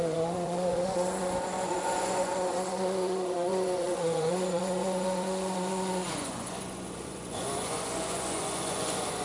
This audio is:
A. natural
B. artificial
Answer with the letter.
B